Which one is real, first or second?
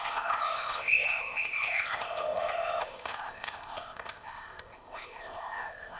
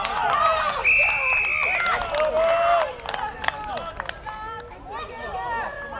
second